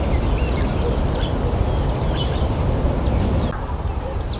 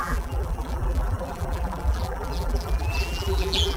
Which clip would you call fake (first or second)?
second